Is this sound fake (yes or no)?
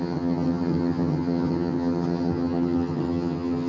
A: yes